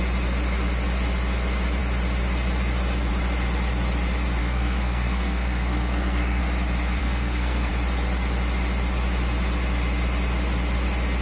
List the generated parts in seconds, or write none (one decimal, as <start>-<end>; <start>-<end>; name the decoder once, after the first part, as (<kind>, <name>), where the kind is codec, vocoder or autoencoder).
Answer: 4.4-6.4 (codec, SNAC); 7.0-7.7

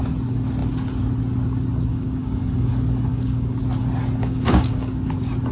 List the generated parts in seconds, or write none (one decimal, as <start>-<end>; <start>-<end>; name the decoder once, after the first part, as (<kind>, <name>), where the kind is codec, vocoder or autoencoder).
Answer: 1.9-2.7 (codec, DAC); 3.1-3.6; 4.2-5.1

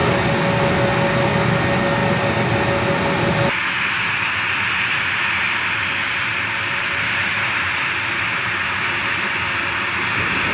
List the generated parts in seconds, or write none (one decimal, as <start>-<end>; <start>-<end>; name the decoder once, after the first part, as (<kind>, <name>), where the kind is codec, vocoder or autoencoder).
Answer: 6.3-9.6 (vocoder, BigVGAN v2)

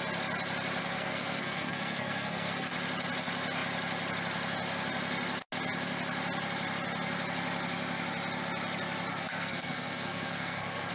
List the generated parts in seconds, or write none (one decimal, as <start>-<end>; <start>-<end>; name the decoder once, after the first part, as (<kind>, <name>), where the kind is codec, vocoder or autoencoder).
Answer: 0.8-2.7 (codec, SNAC); 9.1-10.9